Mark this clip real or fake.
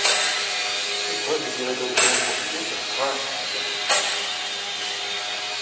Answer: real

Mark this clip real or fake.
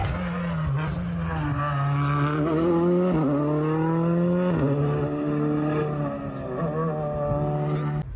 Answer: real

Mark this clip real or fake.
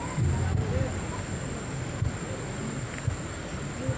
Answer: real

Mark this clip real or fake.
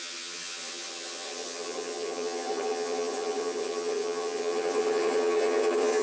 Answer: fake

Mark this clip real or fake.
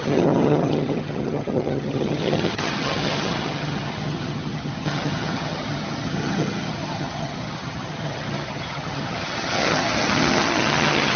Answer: fake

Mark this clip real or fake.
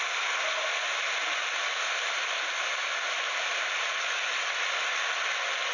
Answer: real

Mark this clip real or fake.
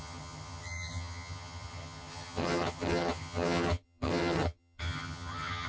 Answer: fake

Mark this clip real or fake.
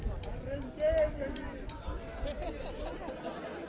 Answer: real